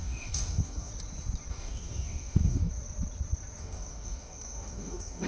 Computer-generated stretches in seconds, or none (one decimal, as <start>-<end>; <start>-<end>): 0.0-0.9; 1.5-2.7; 3.6-5.3